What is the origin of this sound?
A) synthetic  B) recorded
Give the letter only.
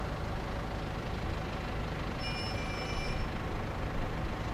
B